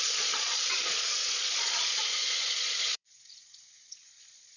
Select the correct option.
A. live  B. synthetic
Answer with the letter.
B